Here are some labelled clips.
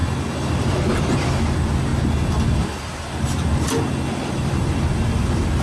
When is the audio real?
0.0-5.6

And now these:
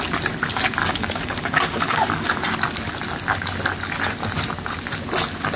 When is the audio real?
0.0-0.8; 2.4-5.6